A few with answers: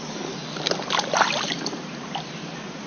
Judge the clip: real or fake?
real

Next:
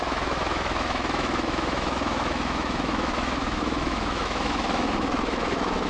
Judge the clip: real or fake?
fake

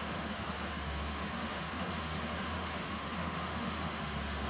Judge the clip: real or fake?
fake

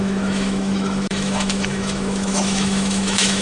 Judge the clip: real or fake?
fake